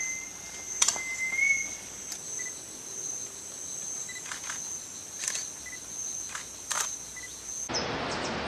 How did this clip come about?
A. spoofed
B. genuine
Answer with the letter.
B